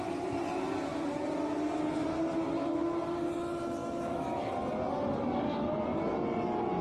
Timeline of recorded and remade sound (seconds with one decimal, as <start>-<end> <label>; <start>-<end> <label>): 0.0-3.8 recorded; 3.8-4.4 remade; 4.4-6.8 recorded